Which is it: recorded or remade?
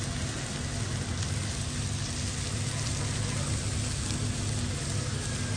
recorded